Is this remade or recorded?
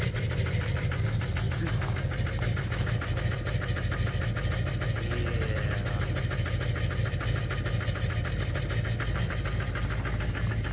recorded